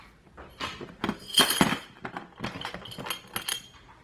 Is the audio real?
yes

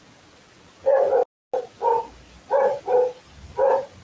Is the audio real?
yes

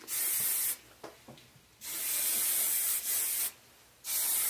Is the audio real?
yes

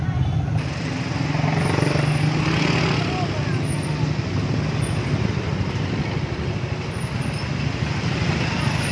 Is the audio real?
yes